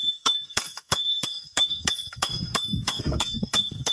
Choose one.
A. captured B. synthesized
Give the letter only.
B